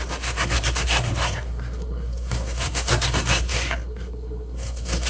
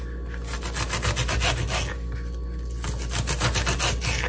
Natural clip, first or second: second